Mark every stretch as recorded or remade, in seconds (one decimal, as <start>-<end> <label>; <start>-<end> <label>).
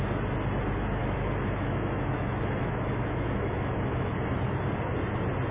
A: 0.0-1.0 recorded; 1.0-4.1 remade; 4.1-5.5 recorded